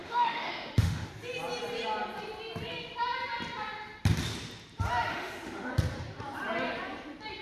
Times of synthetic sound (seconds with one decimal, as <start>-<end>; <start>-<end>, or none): 0.0-1.1; 5.1-5.7